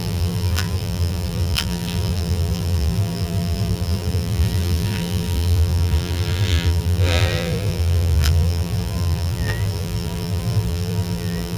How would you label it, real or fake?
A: fake